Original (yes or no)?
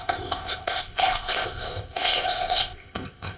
no